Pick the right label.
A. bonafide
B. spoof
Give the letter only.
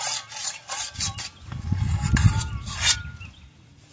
A